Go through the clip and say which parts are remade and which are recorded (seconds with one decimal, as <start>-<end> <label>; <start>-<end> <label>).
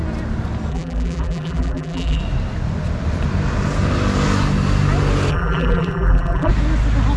0.0-0.7 recorded; 0.7-2.2 remade; 2.2-5.3 recorded; 5.3-6.5 remade; 6.5-7.2 recorded